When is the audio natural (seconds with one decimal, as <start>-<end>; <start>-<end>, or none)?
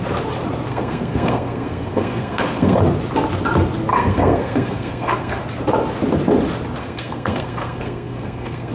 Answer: 0.0-0.7; 2.8-3.9; 5.4-6.8